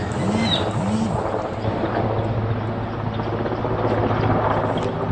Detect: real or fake real